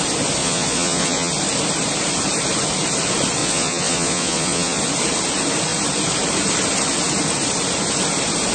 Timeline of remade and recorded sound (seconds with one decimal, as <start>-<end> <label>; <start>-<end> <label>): 0.0-0.4 recorded; 0.4-1.3 remade; 1.3-3.4 recorded; 3.4-4.8 remade; 4.8-8.5 recorded